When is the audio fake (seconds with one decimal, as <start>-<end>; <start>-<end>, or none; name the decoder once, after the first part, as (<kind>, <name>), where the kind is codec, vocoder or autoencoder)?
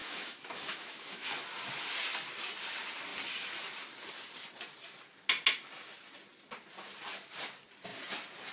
0.0-1.3 (autoencoder, DAC-VAE)